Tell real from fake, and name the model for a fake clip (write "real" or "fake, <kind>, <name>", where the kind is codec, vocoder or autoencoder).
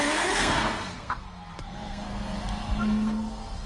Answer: fake, codec, SNAC